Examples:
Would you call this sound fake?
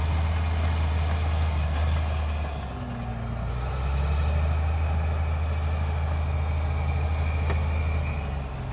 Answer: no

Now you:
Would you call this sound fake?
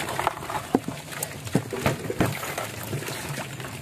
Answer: no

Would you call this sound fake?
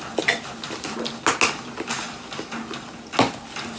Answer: no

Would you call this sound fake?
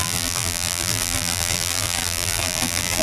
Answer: yes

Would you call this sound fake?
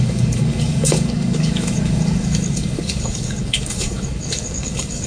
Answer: yes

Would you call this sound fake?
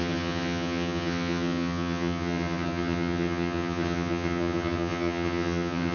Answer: yes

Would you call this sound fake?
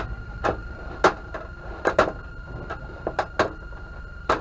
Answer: no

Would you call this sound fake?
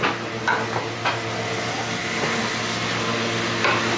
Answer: no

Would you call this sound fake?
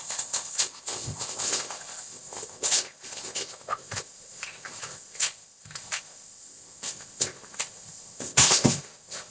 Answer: yes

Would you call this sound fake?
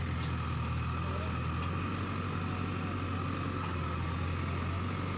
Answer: no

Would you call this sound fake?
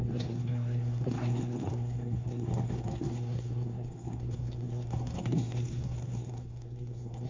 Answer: yes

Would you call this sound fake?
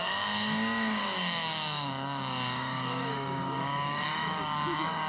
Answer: yes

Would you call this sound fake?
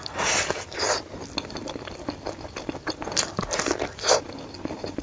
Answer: no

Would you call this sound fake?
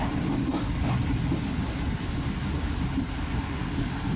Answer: no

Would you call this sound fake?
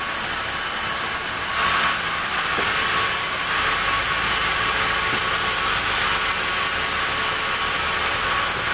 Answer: no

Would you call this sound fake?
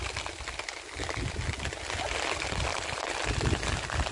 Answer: no